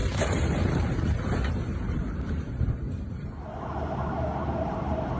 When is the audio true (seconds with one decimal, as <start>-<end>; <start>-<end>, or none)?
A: 3.1-5.2